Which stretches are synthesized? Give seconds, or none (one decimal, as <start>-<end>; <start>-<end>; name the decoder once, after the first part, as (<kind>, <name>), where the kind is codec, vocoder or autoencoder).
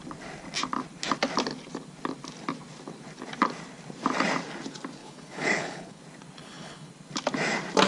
5.0-6.0 (codec, HILCodec); 6.4-6.9